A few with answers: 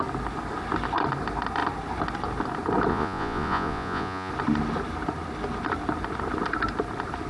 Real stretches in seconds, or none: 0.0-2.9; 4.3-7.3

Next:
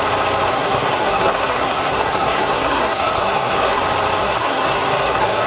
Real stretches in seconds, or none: 0.0-0.5; 3.8-4.2

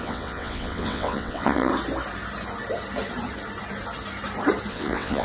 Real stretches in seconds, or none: 1.7-4.7

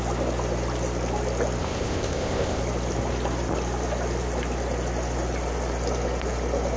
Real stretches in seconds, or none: 0.0-1.6; 2.6-6.8

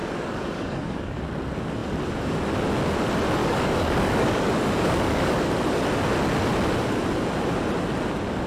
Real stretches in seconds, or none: 1.2-3.4; 5.5-8.5

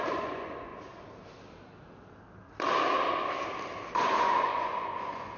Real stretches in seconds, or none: 0.7-3.9

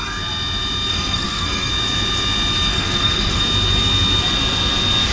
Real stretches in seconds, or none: 0.0-0.9; 1.7-2.7; 3.4-5.1

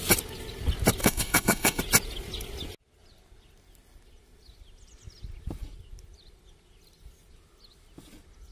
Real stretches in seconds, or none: 0.0-1.0; 1.8-8.5